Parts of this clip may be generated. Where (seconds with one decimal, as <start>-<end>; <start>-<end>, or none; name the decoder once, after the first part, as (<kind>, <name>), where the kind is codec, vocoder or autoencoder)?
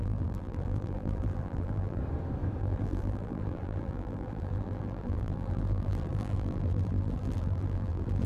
0.0-2.0 (vocoder, BigVGAN v2); 2.6-8.3